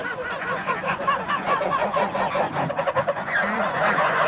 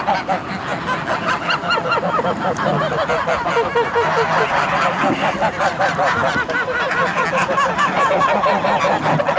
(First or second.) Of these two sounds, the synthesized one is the first